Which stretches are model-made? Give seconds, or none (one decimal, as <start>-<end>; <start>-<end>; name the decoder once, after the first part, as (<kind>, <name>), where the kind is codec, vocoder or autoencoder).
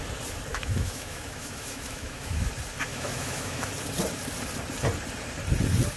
0.5-2.5 (autoencoder, DAC-VAE); 2.9-3.7